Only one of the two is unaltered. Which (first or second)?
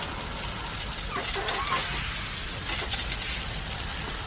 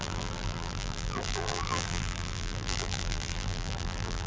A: first